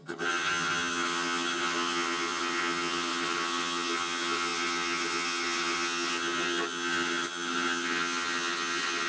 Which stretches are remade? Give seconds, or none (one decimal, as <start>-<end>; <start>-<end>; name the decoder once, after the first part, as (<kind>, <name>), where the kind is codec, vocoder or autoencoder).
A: 0.0-9.1 (vocoder, HiFi-GAN)